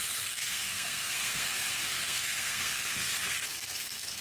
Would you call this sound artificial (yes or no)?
yes